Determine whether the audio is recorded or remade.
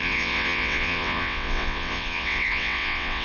remade